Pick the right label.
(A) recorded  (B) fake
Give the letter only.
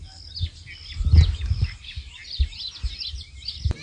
A